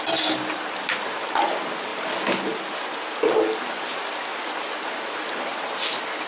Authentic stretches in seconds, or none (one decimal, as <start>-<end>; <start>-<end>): 0.0-6.3

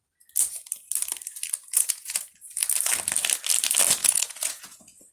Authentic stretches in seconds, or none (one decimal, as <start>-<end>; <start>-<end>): 0.0-1.7; 2.2-4.0

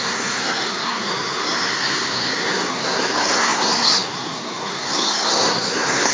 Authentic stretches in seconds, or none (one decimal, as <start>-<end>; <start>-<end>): none

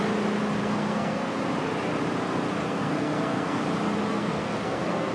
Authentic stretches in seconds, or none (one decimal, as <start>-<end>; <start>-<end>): 0.0-0.6; 1.3-2.6; 3.6-4.1

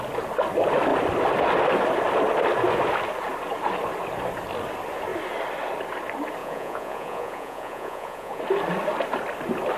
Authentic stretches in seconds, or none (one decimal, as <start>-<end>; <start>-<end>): 0.0-6.4; 8.4-9.8

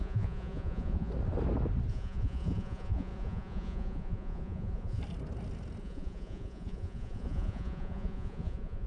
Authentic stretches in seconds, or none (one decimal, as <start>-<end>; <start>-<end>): 1.1-1.9; 5.0-5.8